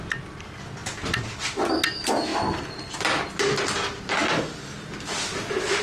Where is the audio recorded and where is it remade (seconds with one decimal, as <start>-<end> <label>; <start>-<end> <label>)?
0.0-5.8 recorded